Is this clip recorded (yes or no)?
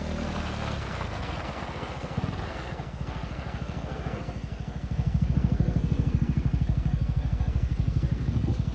no